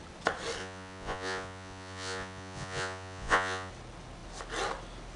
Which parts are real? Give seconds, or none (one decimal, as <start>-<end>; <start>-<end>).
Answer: 0.0-0.6; 3.7-5.2